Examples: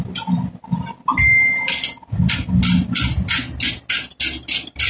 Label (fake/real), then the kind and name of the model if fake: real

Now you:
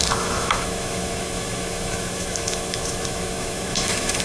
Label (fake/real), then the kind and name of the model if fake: fake, autoencoder, DAC-VAE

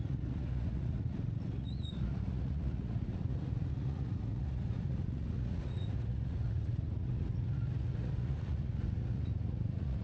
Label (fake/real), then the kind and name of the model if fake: fake, vocoder, Vocos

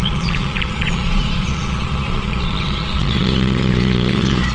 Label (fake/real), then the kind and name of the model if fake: fake, vocoder, Vocos